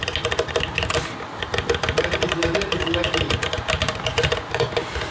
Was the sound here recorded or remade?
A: recorded